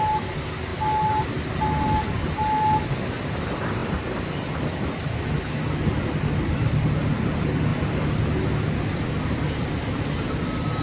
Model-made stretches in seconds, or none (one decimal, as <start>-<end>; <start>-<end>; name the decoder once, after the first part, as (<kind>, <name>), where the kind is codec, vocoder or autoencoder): none